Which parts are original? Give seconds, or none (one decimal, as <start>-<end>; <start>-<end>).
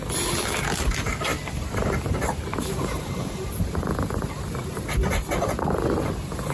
0.0-1.3; 5.1-6.5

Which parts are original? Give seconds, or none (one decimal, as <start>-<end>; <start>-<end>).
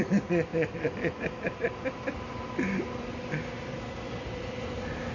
0.0-5.1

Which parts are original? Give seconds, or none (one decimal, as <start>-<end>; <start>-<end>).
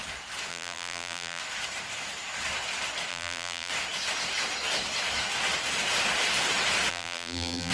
0.0-0.5; 1.4-3.1; 3.7-6.9